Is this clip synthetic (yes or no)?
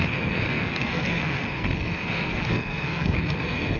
yes